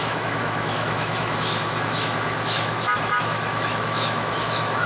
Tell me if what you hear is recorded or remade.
remade